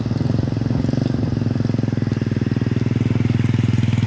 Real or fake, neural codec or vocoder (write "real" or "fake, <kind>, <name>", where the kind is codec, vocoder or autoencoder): real